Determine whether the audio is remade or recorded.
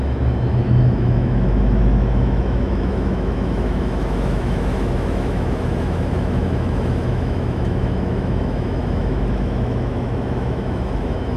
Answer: remade